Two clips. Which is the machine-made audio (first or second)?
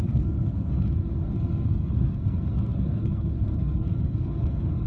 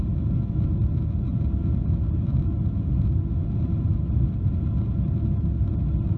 first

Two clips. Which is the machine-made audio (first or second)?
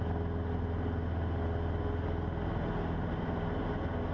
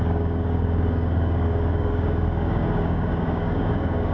second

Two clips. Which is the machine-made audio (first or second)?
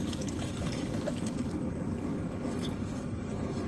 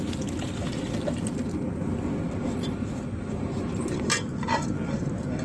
first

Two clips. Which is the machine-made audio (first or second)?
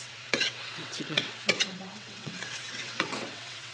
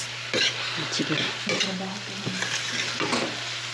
first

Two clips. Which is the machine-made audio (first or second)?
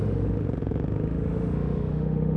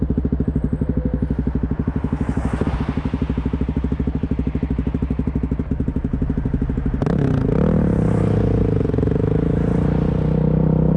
first